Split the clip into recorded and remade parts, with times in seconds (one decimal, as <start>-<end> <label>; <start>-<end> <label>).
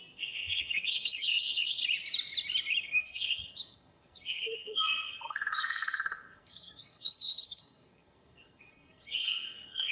0.0-1.8 remade; 1.8-2.8 recorded; 2.8-9.9 remade